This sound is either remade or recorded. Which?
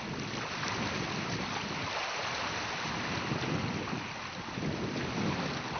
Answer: recorded